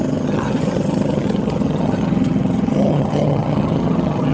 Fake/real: fake